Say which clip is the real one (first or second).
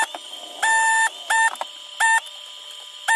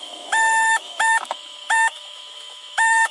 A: first